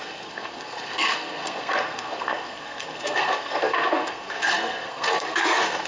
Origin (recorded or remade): remade